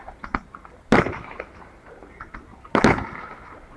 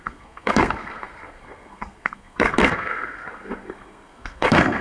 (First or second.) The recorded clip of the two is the first